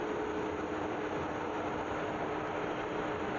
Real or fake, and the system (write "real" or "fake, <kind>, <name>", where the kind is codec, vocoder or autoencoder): real